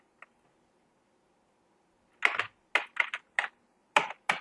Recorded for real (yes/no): yes